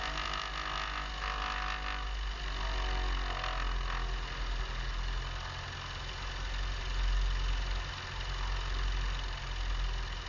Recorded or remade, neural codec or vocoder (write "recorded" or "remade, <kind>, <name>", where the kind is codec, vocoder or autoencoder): recorded